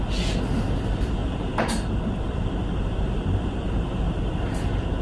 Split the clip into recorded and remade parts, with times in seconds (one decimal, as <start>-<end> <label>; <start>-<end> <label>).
0.0-1.2 recorded; 1.2-4.2 remade; 4.2-5.0 recorded